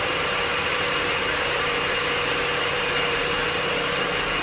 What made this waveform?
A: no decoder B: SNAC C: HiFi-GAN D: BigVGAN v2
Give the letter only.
D